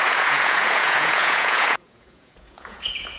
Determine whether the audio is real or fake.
fake